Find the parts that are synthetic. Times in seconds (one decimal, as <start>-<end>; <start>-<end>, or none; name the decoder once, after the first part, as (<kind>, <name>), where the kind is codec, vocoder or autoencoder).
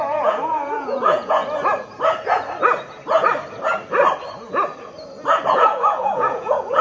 0.0-1.4 (vocoder, Vocos); 5.5-6.8